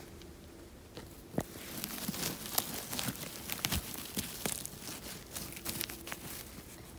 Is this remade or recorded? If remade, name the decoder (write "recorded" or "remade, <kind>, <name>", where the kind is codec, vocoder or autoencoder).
recorded